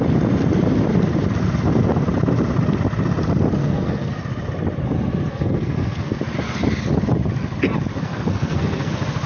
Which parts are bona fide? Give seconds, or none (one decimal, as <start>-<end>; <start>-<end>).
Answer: 0.0-3.6; 4.1-5.3; 6.2-7.9; 8.9-9.3